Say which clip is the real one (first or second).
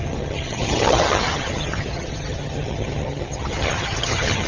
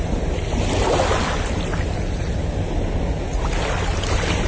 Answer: second